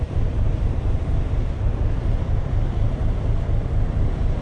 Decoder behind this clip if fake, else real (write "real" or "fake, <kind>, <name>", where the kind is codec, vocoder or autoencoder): fake, vocoder, BigVGAN v2